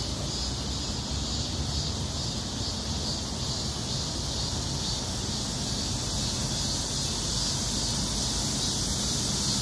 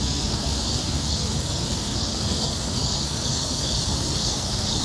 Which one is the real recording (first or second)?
first